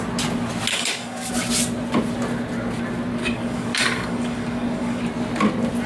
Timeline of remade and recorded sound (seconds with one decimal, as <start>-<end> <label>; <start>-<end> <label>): 0.0-0.7 recorded; 0.7-1.3 remade; 1.3-3.2 recorded; 3.2-5.0 remade; 5.0-5.9 recorded